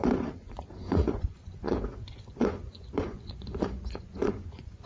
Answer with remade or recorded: remade